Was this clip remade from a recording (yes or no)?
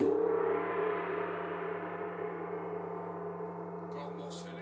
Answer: yes